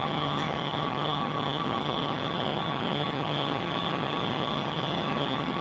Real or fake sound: fake